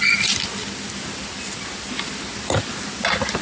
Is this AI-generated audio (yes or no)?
no